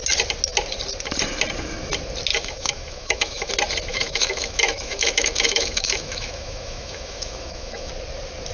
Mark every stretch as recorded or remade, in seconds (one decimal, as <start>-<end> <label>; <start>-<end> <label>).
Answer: 0.0-2.3 recorded; 2.3-3.5 remade; 3.5-3.9 recorded; 3.9-7.9 remade; 7.9-8.5 recorded